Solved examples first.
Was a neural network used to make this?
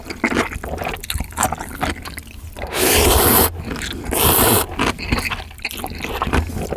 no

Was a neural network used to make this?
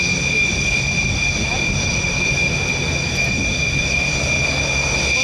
no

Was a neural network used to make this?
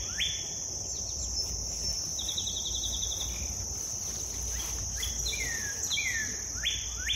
no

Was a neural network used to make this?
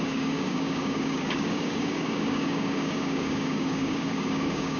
yes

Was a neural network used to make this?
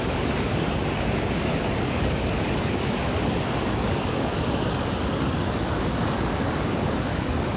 yes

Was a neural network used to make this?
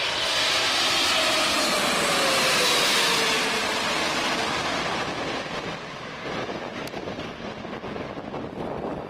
no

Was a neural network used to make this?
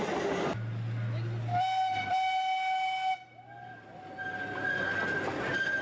no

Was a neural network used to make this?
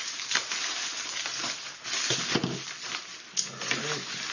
no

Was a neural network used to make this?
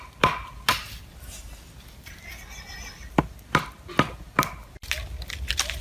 no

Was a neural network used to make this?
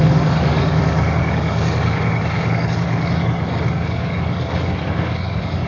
yes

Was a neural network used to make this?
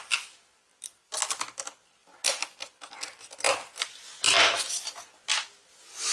no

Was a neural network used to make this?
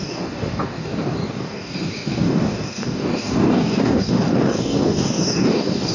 yes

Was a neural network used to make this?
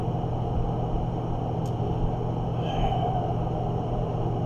no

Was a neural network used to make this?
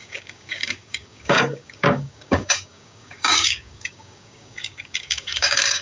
yes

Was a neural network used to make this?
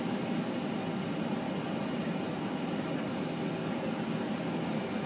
no